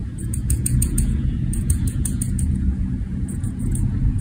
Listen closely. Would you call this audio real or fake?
fake